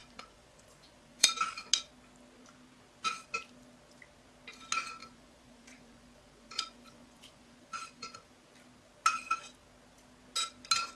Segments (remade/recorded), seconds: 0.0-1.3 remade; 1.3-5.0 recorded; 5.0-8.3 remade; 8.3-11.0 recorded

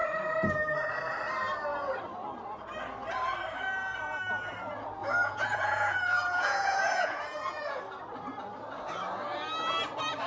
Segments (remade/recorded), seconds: 0.0-5.0 recorded; 5.0-7.8 remade; 7.8-10.3 recorded

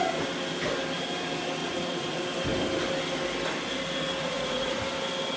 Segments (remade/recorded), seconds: 0.0-1.6 recorded; 1.6-2.2 remade; 2.2-4.2 recorded; 4.2-4.8 remade; 4.8-5.4 recorded

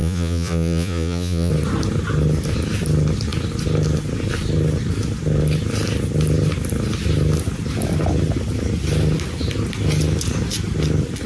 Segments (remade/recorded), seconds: 0.0-1.5 remade; 1.5-11.3 recorded